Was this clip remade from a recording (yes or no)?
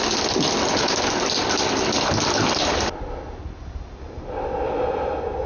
no